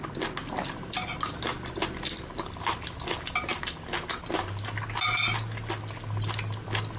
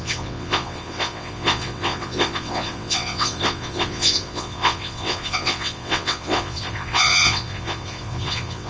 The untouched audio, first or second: first